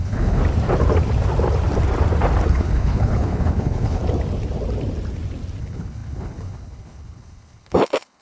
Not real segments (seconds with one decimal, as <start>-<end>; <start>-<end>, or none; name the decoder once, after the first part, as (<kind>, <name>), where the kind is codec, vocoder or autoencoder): 0.0-0.4 (codec, HILCodec); 2.5-4.0; 5.6-8.2